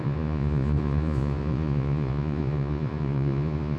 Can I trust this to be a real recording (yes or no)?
no